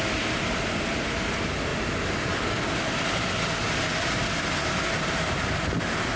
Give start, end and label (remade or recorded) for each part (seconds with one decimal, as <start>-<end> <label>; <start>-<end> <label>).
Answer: 0.0-6.2 recorded